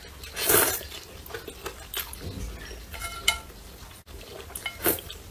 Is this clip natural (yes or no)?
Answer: yes